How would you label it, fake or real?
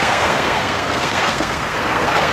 fake